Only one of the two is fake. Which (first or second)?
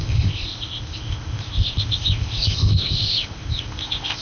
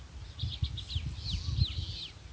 first